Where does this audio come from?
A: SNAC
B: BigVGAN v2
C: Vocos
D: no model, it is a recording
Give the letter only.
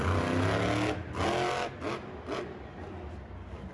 D